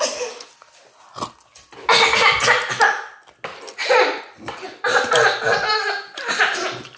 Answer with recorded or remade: recorded